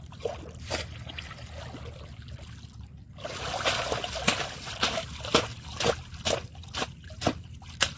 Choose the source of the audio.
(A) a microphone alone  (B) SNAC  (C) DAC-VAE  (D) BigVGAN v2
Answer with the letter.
A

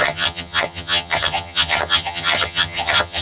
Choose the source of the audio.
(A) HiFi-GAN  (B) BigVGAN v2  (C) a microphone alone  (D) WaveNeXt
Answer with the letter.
A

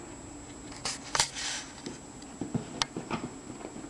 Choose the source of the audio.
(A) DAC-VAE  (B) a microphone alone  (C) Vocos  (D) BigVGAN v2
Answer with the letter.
B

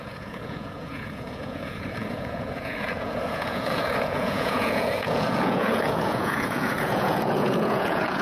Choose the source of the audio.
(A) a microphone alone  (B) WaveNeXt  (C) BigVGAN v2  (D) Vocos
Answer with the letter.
D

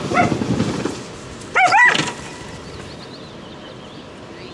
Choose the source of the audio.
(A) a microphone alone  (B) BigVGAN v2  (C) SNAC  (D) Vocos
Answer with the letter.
A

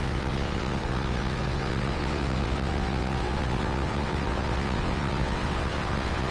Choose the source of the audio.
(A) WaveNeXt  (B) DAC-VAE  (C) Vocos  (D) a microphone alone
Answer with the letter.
A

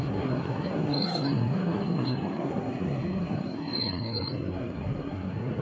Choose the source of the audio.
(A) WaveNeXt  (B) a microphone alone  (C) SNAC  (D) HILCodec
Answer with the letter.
C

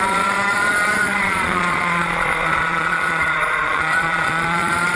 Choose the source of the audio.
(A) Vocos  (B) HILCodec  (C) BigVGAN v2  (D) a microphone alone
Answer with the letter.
A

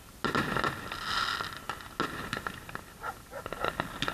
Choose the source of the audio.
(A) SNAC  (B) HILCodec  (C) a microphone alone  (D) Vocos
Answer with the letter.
C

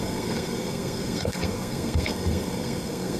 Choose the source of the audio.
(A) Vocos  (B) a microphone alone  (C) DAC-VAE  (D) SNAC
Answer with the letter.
D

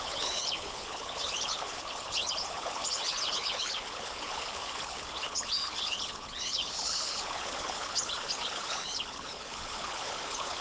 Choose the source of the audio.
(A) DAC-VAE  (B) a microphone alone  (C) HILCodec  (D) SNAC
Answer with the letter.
C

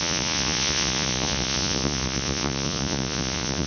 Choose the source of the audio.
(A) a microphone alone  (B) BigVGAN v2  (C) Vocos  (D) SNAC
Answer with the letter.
C